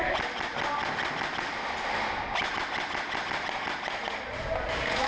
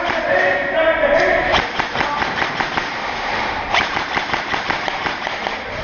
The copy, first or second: second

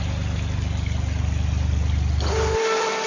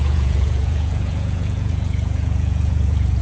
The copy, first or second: second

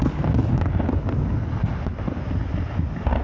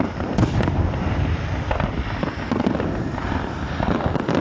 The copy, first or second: second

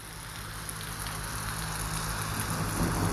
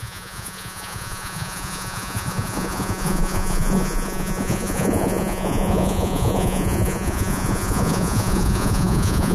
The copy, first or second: second